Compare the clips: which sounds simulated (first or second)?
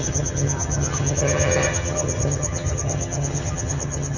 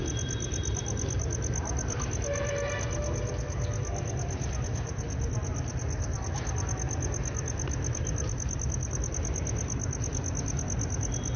first